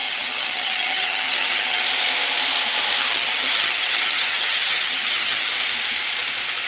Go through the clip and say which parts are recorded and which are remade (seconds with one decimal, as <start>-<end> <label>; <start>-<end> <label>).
0.0-1.8 remade; 1.8-3.0 recorded; 3.0-5.5 remade; 5.5-6.7 recorded